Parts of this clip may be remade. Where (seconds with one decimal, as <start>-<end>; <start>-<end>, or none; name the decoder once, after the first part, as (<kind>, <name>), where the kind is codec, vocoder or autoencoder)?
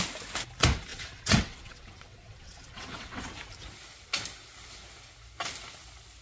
0.9-3.3 (vocoder, WaveNeXt)